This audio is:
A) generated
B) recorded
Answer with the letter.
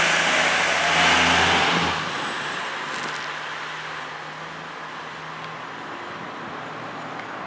B